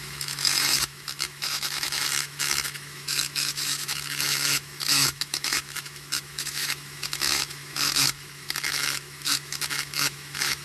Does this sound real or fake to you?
fake